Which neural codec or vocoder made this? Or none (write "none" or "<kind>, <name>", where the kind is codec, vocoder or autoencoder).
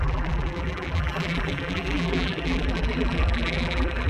vocoder, BigVGAN v2